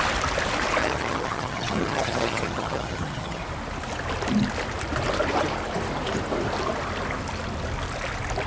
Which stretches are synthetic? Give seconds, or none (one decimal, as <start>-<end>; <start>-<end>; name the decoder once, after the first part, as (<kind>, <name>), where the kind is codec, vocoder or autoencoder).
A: 0.8-3.4 (vocoder, HiFi-GAN)